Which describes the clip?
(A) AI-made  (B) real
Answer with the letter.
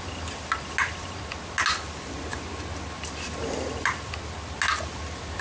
B